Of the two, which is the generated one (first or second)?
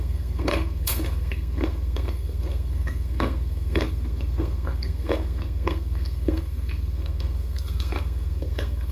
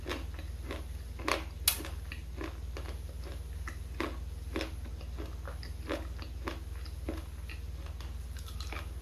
first